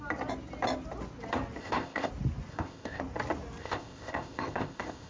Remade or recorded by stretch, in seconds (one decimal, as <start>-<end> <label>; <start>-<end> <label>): 0.0-1.6 recorded; 1.6-2.1 remade; 2.1-2.5 recorded; 2.5-3.0 remade; 3.0-3.6 recorded; 3.6-5.1 remade